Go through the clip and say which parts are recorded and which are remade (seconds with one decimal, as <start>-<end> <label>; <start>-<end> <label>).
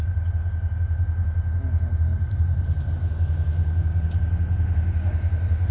0.0-2.1 recorded; 2.1-2.9 remade; 2.9-5.7 recorded